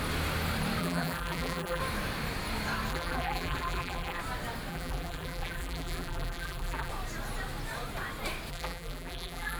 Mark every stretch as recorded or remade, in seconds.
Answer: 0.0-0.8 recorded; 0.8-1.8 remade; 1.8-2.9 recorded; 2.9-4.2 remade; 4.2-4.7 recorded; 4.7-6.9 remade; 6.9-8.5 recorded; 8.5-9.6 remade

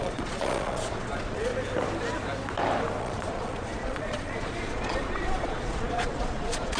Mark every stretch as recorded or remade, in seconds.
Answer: 0.0-1.5 remade; 1.5-3.0 recorded; 3.0-6.8 remade

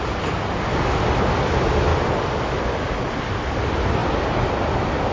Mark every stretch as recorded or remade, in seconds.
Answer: 0.0-5.1 recorded

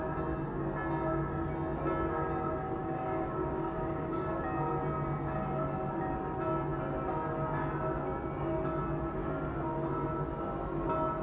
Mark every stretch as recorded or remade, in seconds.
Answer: 0.0-2.8 recorded; 2.8-4.4 remade; 4.4-11.2 recorded

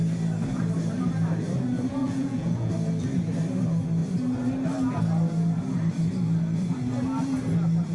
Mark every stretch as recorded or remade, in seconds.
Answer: 0.0-2.0 recorded; 2.0-2.7 remade; 2.7-7.9 recorded